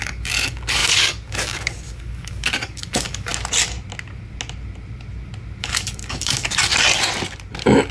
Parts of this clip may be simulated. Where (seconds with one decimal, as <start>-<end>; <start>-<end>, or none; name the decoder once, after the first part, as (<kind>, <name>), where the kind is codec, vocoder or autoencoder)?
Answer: 0.0-3.3 (codec, DAC); 5.6-6.7